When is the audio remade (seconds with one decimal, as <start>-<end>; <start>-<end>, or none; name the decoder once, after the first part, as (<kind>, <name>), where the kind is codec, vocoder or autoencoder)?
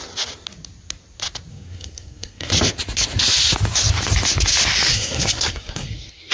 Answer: 1.5-2.5 (codec, SNAC); 4.9-6.3